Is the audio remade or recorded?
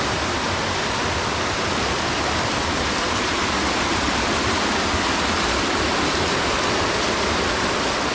recorded